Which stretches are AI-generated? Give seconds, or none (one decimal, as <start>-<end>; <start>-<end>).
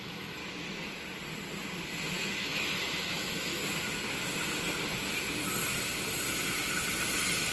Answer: 0.0-0.4; 2.3-3.6